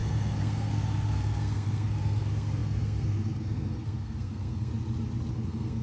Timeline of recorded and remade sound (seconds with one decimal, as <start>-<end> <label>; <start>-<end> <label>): 0.0-4.7 remade; 4.7-5.3 recorded; 5.3-5.8 remade